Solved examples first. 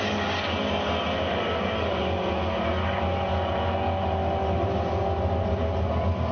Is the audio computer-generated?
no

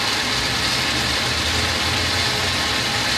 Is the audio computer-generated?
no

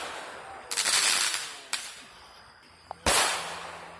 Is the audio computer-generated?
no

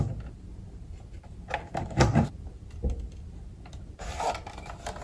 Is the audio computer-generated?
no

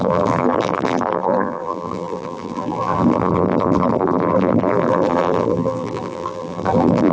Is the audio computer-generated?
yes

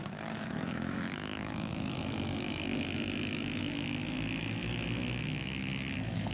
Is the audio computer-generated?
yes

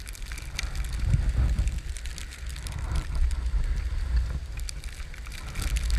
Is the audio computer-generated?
no